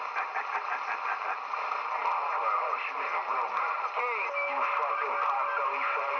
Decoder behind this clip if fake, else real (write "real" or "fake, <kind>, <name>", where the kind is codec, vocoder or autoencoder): real